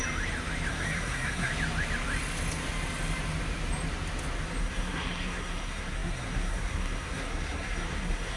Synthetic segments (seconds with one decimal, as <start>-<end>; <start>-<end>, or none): 0.7-1.5; 4.6-8.4